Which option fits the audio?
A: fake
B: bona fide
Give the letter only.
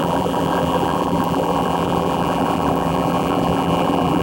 A